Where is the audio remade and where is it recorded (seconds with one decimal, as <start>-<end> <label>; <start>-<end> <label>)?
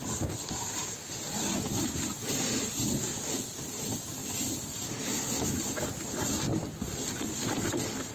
0.0-4.2 recorded; 4.2-4.8 remade; 4.8-6.5 recorded; 6.5-8.1 remade